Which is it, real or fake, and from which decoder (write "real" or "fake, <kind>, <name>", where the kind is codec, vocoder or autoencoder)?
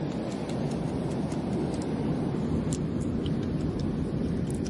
real